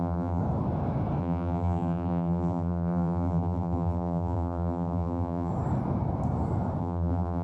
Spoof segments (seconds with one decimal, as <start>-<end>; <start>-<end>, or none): 0.0-0.4; 1.2-5.5; 6.8-7.4